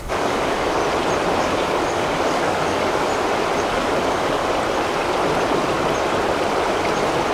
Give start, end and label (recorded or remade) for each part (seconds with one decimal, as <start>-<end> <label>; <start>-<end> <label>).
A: 0.0-0.8 remade; 0.8-1.4 recorded; 1.4-3.1 remade; 3.1-3.7 recorded; 3.7-4.4 remade; 4.4-7.3 recorded